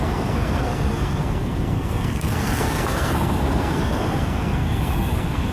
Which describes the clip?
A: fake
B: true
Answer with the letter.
A